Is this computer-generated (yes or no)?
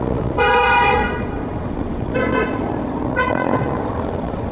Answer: yes